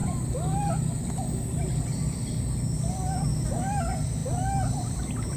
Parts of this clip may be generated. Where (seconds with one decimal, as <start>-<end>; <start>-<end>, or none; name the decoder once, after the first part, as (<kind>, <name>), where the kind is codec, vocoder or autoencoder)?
none